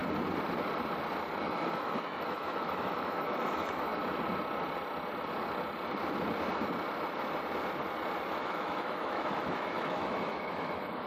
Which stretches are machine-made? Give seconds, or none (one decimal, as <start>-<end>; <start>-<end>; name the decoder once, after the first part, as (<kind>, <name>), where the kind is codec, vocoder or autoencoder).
1.4-3.9 (autoencoder, DAC-VAE); 8.4-11.1